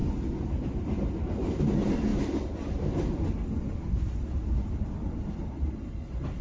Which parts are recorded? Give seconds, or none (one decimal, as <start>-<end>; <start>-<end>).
0.0-6.4